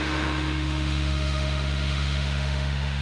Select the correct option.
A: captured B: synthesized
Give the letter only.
B